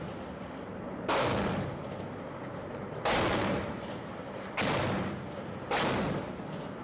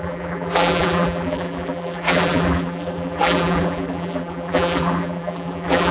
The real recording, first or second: first